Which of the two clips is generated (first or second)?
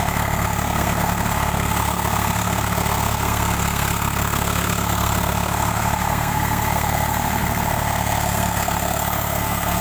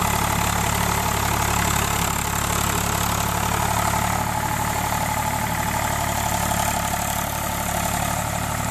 first